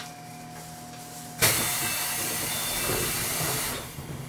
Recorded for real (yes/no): yes